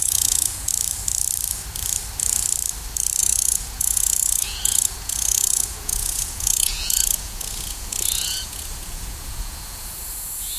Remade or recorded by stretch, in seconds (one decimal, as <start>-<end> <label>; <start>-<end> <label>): 0.0-0.7 remade; 0.7-3.2 recorded; 3.2-10.6 remade